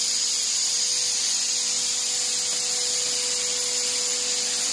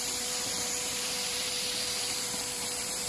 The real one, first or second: first